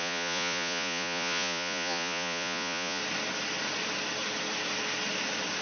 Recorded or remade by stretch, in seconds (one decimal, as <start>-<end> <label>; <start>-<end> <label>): 0.0-3.0 remade; 3.0-5.6 recorded